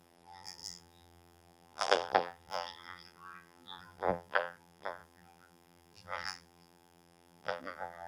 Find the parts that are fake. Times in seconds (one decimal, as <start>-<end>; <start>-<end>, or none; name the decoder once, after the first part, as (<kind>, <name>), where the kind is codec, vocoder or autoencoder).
0.0-8.1 (vocoder, BigVGAN v2)